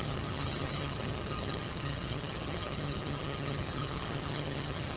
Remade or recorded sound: remade